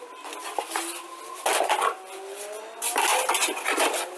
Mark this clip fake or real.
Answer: real